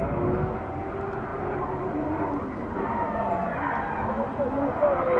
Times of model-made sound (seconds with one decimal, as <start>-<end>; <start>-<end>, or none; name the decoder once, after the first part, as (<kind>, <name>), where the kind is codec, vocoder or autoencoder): none